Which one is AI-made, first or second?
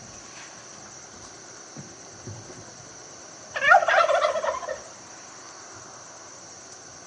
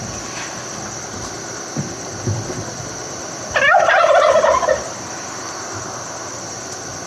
first